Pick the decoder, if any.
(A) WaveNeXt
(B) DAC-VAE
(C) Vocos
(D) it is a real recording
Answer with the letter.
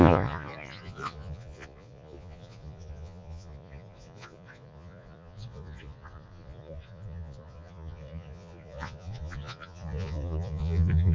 C